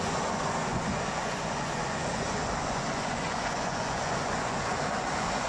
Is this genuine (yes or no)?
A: no